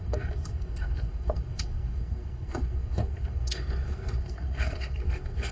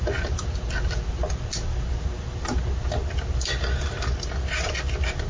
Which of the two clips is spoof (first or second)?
first